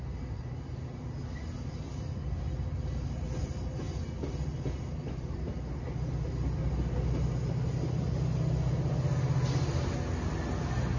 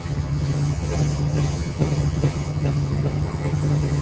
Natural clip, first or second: first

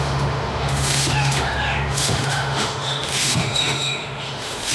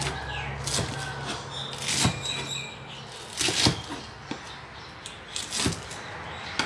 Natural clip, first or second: second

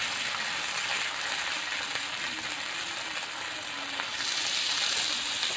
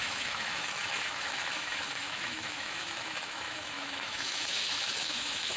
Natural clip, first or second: first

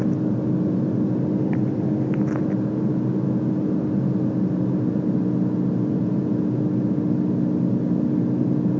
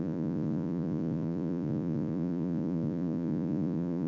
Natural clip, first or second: first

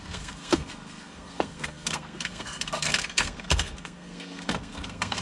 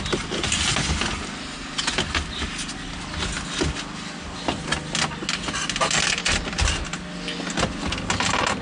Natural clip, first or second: second